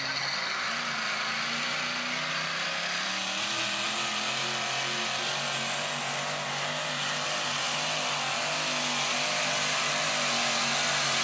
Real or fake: real